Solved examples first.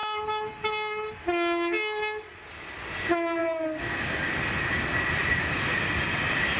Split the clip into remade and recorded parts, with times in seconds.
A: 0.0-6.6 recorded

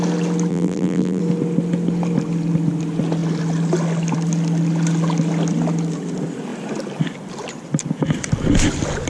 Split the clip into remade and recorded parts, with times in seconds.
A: 0.0-0.5 recorded; 0.5-1.2 remade; 1.2-9.1 recorded